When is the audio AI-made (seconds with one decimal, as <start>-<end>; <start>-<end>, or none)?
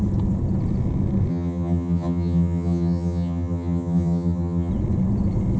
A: 1.3-4.7